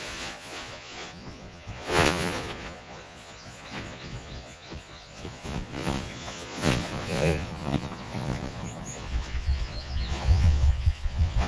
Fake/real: fake